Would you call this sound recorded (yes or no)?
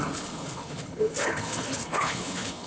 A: no